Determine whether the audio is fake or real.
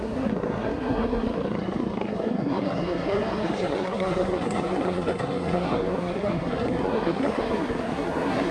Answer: fake